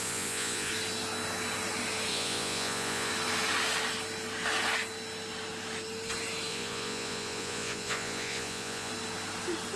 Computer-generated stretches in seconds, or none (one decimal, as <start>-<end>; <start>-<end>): 0.0-0.7; 2.1-3.1; 6.5-8.9

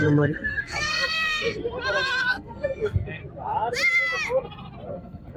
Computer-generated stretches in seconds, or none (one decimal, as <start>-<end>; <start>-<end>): 0.0-1.6; 2.2-3.2; 4.9-5.4

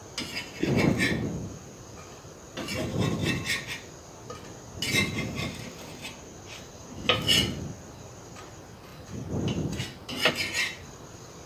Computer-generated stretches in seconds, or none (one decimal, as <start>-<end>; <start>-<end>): none

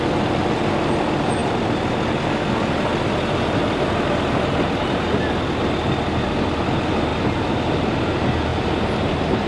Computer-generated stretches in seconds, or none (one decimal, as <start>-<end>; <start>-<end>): none

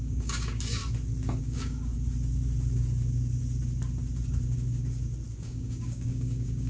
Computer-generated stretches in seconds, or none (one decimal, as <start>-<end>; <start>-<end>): 0.0-0.8; 1.4-1.9; 5.4-6.7

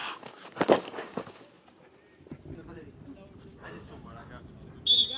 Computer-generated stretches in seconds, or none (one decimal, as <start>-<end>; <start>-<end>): 0.0-1.5; 3.5-4.1

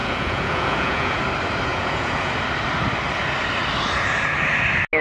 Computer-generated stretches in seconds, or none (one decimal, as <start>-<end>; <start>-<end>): 0.0-1.2; 1.7-2.3

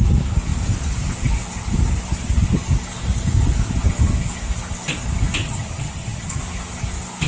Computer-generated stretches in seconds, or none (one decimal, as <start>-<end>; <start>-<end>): 5.4-6.4